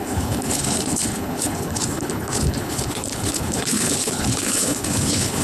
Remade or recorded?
remade